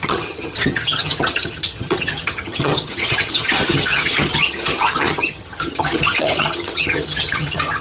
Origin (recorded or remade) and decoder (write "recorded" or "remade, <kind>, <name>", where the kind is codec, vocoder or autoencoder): remade, vocoder, HiFi-GAN